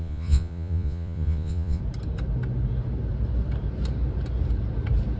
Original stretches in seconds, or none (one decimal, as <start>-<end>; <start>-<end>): 1.8-5.2